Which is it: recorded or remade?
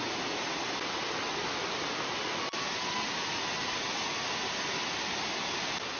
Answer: recorded